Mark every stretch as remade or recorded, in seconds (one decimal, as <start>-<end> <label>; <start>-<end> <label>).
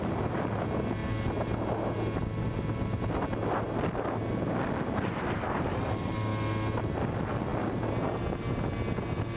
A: 0.0-9.4 recorded